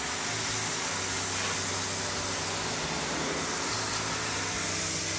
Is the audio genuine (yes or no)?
yes